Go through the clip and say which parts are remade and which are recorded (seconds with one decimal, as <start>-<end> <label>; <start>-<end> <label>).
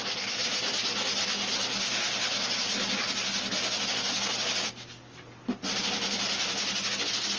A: 0.0-7.4 recorded